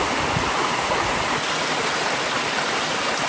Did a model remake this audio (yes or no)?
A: no